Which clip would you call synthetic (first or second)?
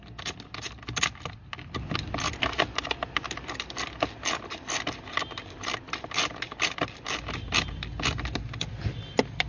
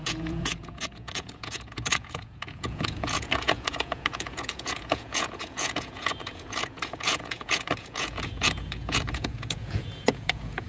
second